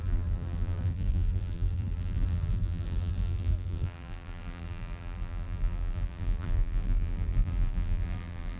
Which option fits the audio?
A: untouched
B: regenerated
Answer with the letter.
B